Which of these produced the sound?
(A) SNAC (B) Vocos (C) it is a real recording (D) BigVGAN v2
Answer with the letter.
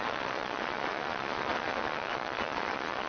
B